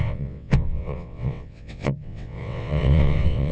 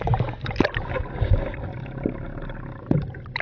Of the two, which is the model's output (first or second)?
first